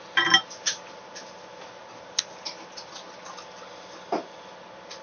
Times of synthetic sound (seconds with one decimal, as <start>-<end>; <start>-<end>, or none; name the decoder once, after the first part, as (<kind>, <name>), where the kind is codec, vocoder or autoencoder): none